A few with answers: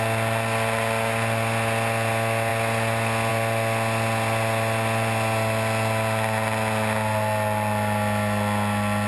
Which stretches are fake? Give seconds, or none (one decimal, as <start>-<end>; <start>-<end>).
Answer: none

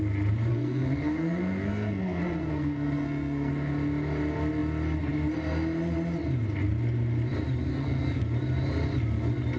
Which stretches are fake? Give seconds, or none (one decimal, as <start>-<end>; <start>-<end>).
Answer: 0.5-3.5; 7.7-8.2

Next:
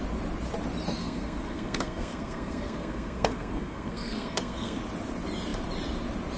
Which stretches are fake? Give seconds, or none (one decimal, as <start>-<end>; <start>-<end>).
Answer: 1.0-4.8